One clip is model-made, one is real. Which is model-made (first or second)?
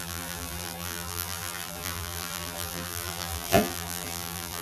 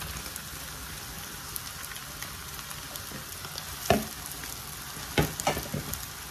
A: first